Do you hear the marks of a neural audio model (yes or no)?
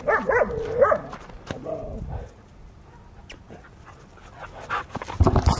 no